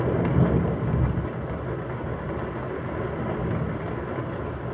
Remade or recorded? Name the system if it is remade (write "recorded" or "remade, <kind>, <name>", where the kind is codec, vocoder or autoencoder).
recorded